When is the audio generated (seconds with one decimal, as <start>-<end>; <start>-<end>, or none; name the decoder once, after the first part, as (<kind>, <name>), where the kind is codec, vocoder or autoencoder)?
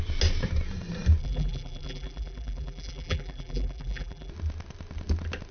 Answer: 1.2-4.3 (vocoder, BigVGAN v2)